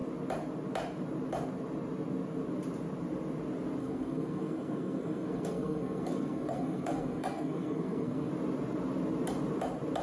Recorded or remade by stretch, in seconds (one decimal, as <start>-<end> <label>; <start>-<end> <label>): 0.0-3.8 recorded; 3.8-8.3 remade; 8.3-10.0 recorded